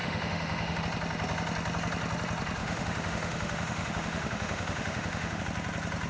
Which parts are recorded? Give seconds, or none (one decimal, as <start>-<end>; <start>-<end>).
0.8-2.6; 5.4-6.1